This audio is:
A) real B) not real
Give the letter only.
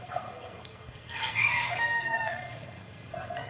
B